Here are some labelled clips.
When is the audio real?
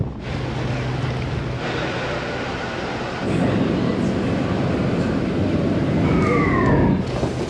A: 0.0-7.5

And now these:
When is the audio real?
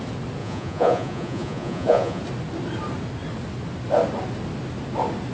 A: 0.0-0.4; 2.2-5.3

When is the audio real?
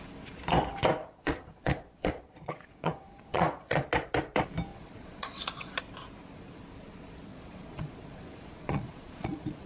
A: 0.0-1.0; 3.9-4.7; 5.8-7.3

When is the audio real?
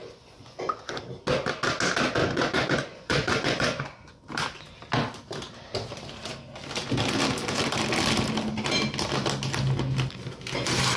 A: 1.0-2.2; 4.2-11.0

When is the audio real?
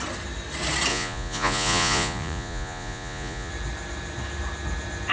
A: 0.0-0.9; 3.5-5.1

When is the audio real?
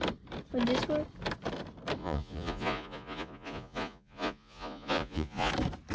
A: 0.0-2.0; 5.5-5.9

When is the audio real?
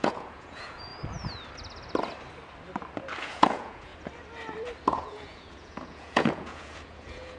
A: 0.9-3.2; 3.9-4.9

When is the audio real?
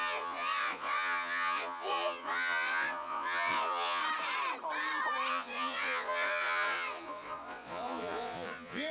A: 4.0-5.3